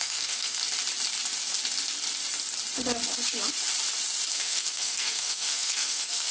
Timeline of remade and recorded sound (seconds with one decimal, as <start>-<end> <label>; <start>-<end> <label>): 0.0-0.6 remade; 0.6-4.3 recorded; 4.3-6.3 remade